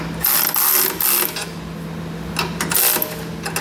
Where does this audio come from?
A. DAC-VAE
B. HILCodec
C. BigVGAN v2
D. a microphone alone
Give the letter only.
D